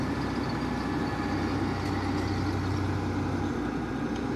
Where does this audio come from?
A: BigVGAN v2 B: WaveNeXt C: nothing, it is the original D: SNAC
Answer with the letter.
C